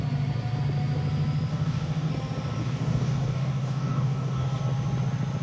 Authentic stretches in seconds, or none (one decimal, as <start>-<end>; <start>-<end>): 0.0-1.5; 2.1-2.6; 4.6-5.4